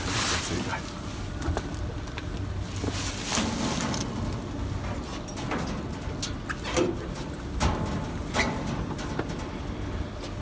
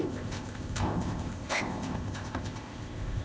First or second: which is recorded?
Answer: first